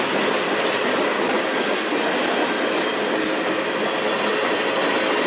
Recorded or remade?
recorded